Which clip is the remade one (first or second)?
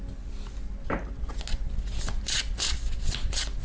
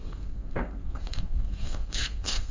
second